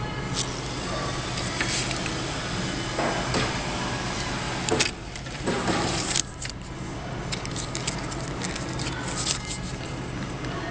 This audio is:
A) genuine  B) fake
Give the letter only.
A